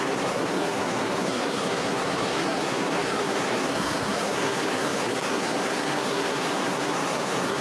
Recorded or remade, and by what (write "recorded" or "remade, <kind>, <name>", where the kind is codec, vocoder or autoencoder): remade, codec, SNAC